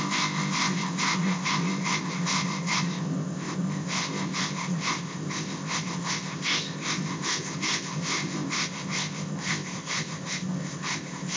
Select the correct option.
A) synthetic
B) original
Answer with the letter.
A